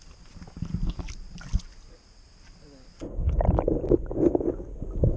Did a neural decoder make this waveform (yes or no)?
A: no